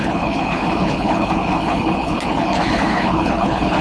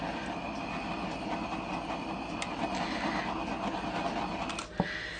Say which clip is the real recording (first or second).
second